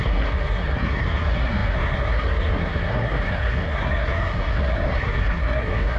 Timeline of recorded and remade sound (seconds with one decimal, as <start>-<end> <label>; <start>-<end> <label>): 0.0-6.0 remade